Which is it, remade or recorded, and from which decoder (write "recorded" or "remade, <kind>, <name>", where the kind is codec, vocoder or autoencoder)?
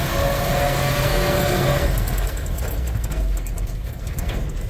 remade, codec, SNAC